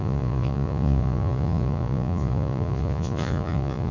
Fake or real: fake